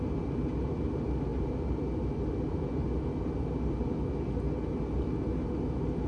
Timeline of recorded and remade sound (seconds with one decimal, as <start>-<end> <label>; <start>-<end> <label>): 0.0-6.1 recorded